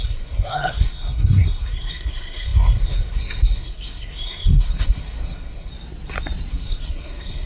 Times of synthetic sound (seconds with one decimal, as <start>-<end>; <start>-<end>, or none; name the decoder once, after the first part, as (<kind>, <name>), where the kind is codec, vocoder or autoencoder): 0.0-5.7 (codec, SNAC); 6.5-7.5